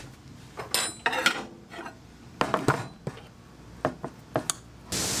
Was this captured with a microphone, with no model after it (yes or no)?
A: yes